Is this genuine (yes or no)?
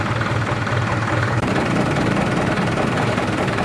no